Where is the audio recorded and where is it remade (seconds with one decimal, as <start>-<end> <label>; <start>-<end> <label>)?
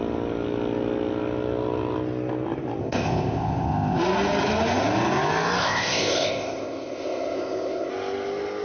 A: 0.0-2.8 recorded; 2.8-4.0 remade; 4.0-5.6 recorded; 5.6-7.9 remade; 7.9-8.6 recorded